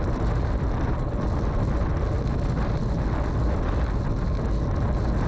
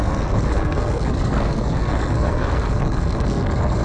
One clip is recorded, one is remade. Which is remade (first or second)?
second